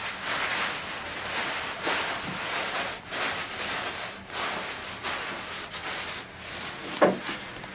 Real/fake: real